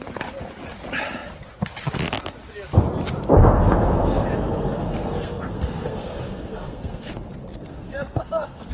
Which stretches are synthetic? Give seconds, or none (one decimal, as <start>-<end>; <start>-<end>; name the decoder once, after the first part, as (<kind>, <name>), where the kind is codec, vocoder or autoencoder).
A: 3.4-7.1 (codec, SNAC); 7.5-8.7